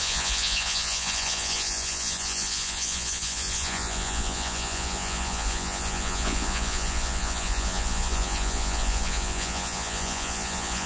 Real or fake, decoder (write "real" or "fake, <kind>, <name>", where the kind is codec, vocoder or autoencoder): fake, vocoder, Vocos